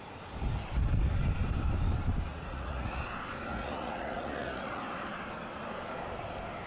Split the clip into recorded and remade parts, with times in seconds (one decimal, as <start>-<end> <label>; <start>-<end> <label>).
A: 0.0-2.3 recorded; 2.3-3.0 remade; 3.0-3.5 recorded; 3.5-4.8 remade; 4.8-6.7 recorded